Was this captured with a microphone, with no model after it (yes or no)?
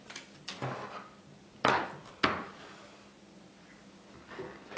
yes